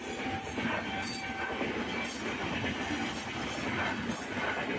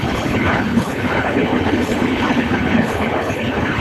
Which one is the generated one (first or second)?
second